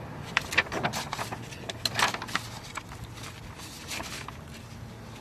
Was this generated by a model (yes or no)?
no